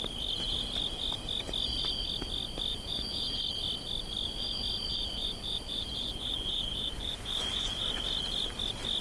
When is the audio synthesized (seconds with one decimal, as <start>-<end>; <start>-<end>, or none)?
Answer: 2.7-3.3; 4.9-7.8